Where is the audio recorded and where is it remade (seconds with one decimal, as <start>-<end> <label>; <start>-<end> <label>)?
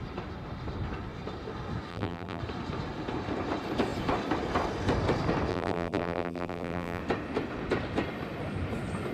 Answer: 0.0-1.9 recorded; 1.9-2.4 remade; 2.4-5.5 recorded; 5.5-7.0 remade; 7.0-9.1 recorded